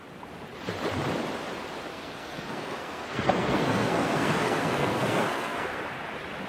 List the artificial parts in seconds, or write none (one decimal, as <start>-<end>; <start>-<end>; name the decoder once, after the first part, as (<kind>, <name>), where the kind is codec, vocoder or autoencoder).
1.9-5.8 (codec, SNAC)